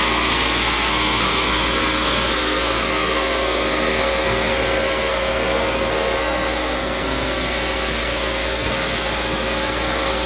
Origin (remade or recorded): remade